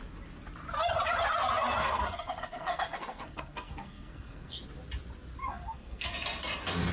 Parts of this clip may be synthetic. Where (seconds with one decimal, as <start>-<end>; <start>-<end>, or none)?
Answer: 1.8-4.6; 5.4-6.1